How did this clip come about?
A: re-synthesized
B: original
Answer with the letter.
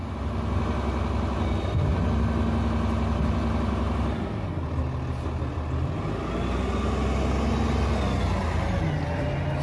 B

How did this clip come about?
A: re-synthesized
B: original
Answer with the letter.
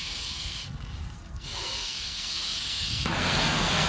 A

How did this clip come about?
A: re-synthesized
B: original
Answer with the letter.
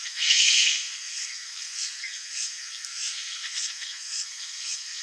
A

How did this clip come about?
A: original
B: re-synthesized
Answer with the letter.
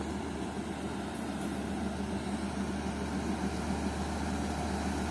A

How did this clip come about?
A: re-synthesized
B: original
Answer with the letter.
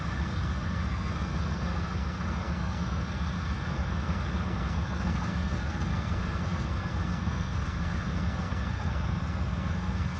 A